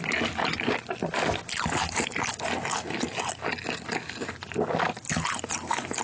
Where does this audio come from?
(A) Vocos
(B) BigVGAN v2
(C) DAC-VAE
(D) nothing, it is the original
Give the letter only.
D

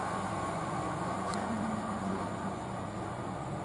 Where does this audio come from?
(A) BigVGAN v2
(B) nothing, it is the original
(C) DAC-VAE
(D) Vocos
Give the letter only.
D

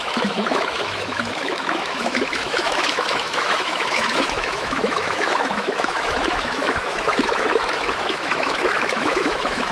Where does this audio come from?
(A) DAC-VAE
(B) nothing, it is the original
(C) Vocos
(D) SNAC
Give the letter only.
A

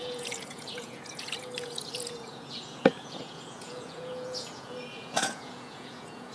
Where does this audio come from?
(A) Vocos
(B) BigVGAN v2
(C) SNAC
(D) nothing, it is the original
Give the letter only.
A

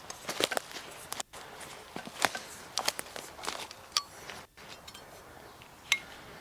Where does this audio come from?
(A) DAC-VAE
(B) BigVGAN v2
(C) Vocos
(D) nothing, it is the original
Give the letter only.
D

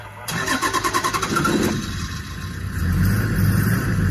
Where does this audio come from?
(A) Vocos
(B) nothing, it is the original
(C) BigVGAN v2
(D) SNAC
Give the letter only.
C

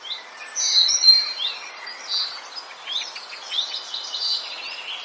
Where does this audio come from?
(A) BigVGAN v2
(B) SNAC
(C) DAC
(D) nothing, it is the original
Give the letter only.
D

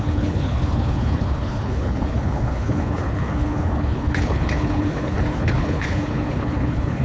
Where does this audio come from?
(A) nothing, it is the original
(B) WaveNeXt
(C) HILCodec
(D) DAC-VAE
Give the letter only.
C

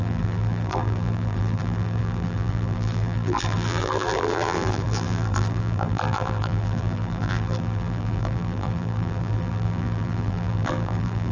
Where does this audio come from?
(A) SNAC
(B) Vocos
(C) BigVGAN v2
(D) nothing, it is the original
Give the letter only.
C